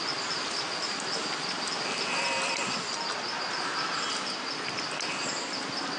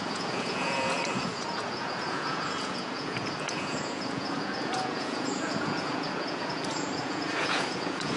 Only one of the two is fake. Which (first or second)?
second